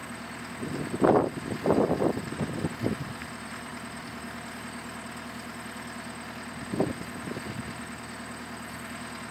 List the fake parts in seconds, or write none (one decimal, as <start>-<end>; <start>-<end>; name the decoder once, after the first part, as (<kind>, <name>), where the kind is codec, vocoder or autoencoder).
0.0-2.3 (vocoder, BigVGAN v2); 3.7-5.5